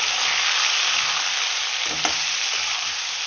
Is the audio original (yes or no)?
yes